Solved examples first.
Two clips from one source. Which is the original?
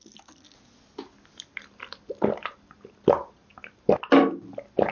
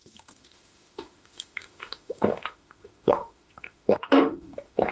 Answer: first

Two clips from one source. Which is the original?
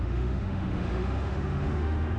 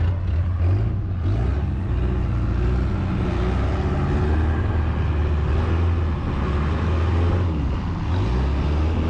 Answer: second